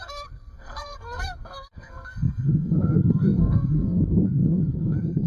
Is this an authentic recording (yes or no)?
no